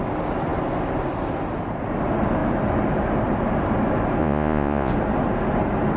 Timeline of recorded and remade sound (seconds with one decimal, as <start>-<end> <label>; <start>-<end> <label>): 0.0-4.2 recorded; 4.2-4.9 remade; 4.9-6.0 recorded